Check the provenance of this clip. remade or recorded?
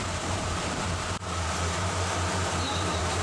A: remade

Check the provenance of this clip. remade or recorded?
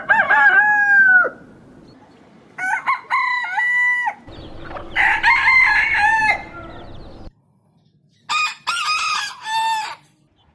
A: recorded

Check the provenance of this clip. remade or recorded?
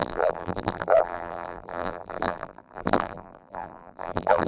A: remade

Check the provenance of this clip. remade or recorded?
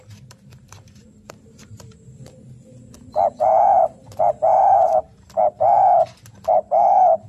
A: remade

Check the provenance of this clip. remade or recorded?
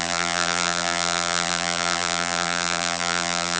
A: remade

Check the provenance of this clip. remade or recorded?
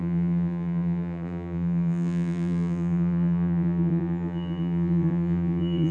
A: remade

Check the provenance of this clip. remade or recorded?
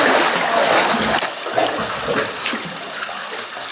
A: recorded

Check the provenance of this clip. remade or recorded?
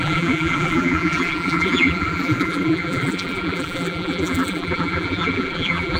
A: remade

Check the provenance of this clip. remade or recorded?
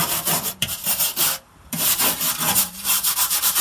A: remade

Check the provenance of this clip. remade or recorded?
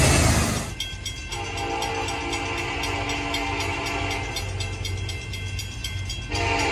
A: recorded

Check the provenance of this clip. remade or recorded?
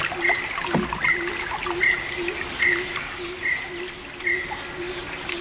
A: recorded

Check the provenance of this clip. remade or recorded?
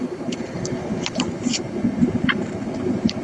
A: remade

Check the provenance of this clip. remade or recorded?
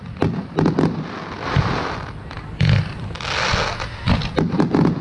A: recorded